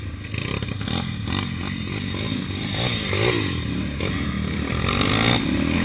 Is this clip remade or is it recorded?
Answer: recorded